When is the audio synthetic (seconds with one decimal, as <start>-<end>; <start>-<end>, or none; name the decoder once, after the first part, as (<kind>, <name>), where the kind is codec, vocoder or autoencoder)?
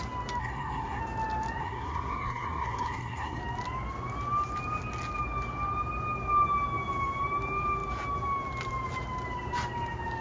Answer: 0.4-1.0 (codec, SNAC); 1.6-3.4